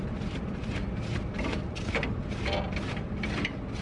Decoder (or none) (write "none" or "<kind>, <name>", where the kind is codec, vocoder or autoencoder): none